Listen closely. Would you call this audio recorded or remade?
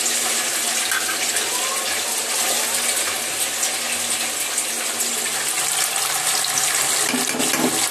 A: recorded